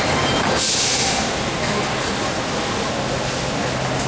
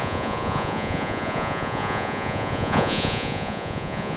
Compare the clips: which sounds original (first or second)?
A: first